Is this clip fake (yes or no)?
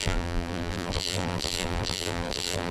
yes